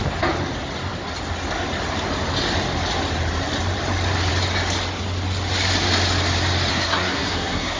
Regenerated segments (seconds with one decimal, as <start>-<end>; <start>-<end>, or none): 6.7-7.8